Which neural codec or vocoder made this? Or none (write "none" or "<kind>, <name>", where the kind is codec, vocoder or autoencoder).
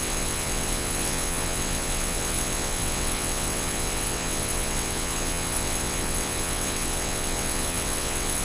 vocoder, WaveNeXt